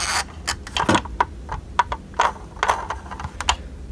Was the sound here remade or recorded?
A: recorded